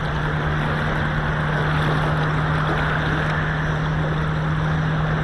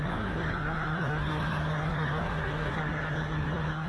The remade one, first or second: second